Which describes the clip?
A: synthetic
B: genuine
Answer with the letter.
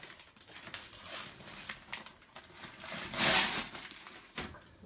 B